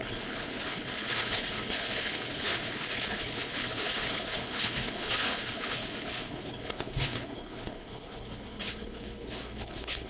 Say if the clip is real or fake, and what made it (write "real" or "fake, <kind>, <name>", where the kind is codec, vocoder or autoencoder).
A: fake, codec, HILCodec